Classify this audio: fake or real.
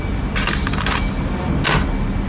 real